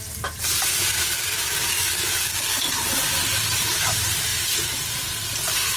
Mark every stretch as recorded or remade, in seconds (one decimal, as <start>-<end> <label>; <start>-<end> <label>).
0.0-0.9 recorded; 0.9-2.7 remade; 2.7-5.8 recorded